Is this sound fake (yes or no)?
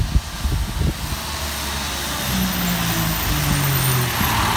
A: no